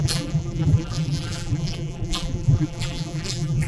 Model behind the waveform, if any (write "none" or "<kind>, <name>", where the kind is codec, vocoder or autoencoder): vocoder, BigVGAN v2